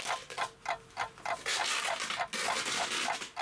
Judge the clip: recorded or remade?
recorded